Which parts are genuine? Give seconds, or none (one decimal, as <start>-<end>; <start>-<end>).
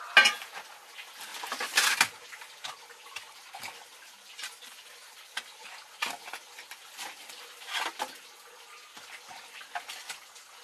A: 0.0-3.9; 7.3-10.6